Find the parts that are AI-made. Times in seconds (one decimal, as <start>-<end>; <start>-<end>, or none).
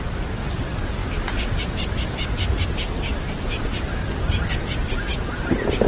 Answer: none